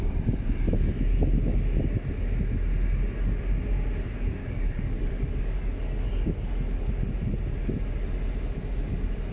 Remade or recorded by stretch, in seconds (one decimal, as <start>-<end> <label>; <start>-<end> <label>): 0.0-4.4 recorded; 4.4-6.9 remade; 6.9-9.3 recorded

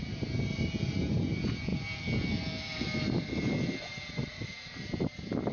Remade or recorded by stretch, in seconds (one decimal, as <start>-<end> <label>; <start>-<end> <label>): 0.0-5.5 recorded

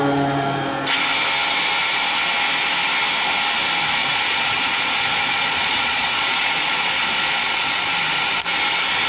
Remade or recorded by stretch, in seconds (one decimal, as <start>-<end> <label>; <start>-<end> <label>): 0.0-4.0 recorded; 4.0-7.8 remade; 7.8-9.1 recorded

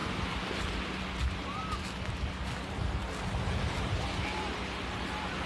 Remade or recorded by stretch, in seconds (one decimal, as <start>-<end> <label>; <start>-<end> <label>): 0.0-1.0 remade; 1.0-5.5 recorded

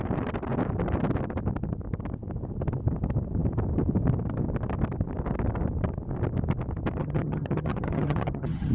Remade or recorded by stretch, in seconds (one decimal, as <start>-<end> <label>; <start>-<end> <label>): 0.0-7.0 recorded; 7.0-8.7 remade